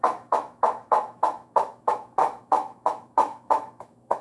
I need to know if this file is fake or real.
fake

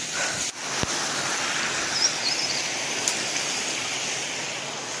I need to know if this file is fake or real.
real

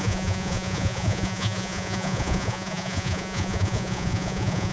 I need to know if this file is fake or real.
fake